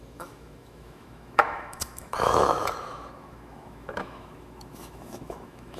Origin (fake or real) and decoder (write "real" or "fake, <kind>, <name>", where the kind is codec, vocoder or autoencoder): fake, autoencoder, DAC-VAE